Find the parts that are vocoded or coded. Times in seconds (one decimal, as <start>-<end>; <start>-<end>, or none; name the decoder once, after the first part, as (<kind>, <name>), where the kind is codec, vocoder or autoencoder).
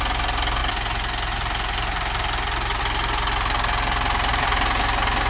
4.3-4.8 (vocoder, BigVGAN v2)